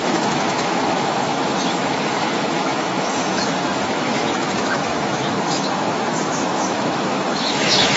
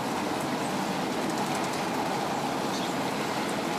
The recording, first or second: second